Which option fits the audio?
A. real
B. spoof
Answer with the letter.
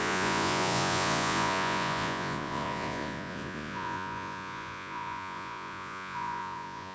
B